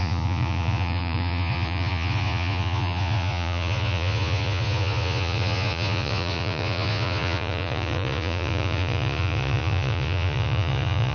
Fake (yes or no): yes